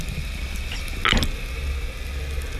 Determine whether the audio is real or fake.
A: real